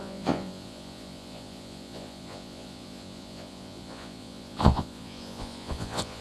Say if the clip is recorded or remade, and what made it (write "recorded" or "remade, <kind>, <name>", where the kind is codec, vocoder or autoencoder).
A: remade, vocoder, Vocos